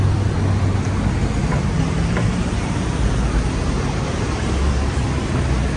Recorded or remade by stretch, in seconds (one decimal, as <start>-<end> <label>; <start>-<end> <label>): 0.0-1.5 recorded; 1.5-4.6 remade; 4.6-5.8 recorded